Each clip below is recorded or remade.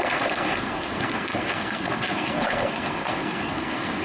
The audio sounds remade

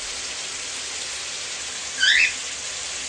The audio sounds recorded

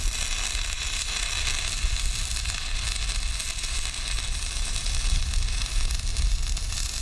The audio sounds recorded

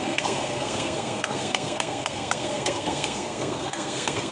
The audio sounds remade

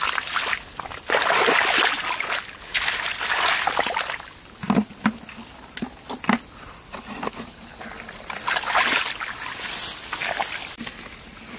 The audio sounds recorded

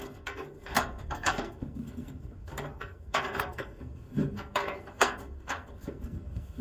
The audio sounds remade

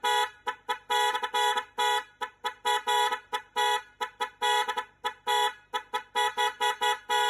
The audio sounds recorded